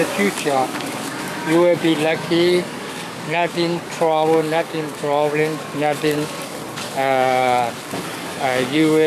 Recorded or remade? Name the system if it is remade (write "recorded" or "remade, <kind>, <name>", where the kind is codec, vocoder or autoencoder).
remade, codec, DAC